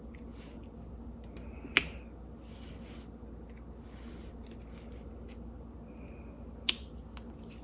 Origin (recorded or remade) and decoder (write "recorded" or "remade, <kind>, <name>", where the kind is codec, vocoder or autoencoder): recorded